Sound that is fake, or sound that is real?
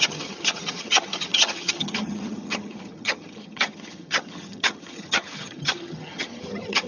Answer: fake